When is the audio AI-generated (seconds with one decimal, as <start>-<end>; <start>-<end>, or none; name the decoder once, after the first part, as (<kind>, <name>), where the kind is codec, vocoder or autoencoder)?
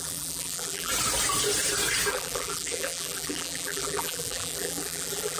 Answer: 0.0-0.9 (vocoder, BigVGAN v2); 2.1-5.4